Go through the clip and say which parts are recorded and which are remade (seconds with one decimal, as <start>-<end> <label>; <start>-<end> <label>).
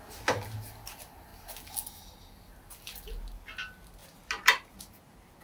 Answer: 0.0-5.4 recorded